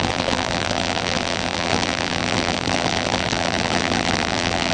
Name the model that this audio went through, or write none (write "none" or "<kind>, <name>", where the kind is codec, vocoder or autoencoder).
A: vocoder, BigVGAN v2